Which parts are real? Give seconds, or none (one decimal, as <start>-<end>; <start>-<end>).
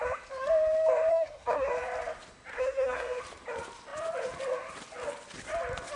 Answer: 0.0-1.1; 1.7-2.5; 3.2-6.0